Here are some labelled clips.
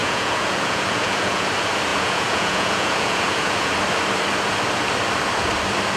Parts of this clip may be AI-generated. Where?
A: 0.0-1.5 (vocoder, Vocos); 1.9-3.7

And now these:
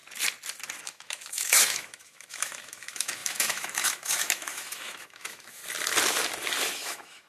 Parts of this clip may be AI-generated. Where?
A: 0.8-5.6 (autoencoder, DAC-VAE); 6.7-7.3

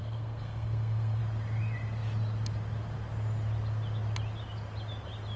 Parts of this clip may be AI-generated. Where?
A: 0.0-1.2 (codec, SNAC)

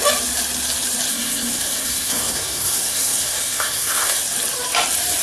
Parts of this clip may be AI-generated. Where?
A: 1.1-4.2 (codec, SNAC)

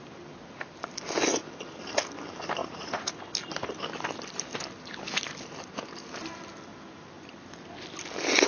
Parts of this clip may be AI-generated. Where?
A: 2.6-3.2 (vocoder, Vocos)

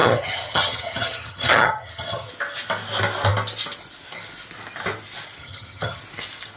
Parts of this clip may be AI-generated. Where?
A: 0.0-2.3 (vocoder, HiFi-GAN); 5.4-6.0

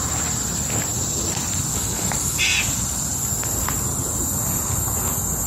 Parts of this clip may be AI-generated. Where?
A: 1.7-2.4 (codec, DAC)

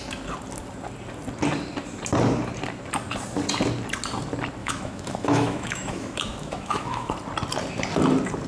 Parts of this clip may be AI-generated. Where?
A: 4.6-7.1 (autoencoder, DAC-VAE)